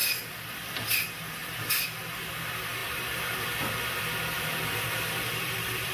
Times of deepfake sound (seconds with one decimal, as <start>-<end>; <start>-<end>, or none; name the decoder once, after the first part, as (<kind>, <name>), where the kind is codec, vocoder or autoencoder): 0.0-0.7 (vocoder, BigVGAN v2); 1.4-2.0; 2.8-5.9